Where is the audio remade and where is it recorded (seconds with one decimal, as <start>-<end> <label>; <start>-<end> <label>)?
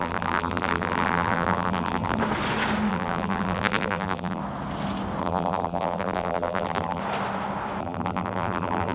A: 0.0-2.2 remade; 2.2-2.9 recorded; 2.9-4.4 remade; 4.4-5.2 recorded; 5.2-7.0 remade; 7.0-7.8 recorded; 7.8-8.9 remade